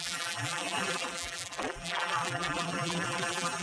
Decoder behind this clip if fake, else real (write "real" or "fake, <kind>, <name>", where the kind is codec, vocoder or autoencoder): fake, vocoder, BigVGAN v2